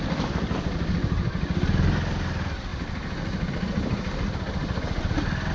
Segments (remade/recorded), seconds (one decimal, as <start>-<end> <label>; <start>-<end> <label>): 0.0-5.5 recorded